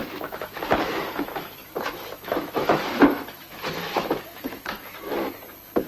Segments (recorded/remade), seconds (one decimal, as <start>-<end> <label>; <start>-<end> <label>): 0.0-0.6 remade; 0.6-1.6 recorded; 1.6-5.1 remade; 5.1-5.9 recorded